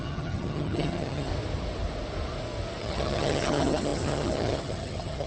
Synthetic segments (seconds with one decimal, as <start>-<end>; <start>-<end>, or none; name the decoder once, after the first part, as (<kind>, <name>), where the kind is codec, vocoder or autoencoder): 0.0-1.3 (vocoder, HiFi-GAN); 2.8-5.3